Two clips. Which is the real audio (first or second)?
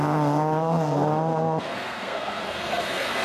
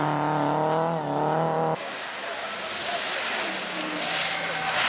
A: second